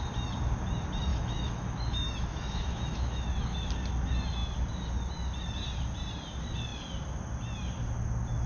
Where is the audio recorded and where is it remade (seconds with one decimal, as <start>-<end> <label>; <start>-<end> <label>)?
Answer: 0.0-1.1 recorded; 1.1-3.7 remade; 3.7-8.5 recorded